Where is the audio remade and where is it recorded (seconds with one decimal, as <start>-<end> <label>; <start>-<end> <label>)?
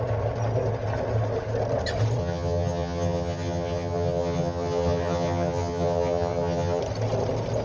0.0-2.2 recorded; 2.2-6.8 remade; 6.8-7.6 recorded